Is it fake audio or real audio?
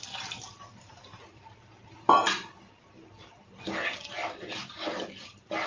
real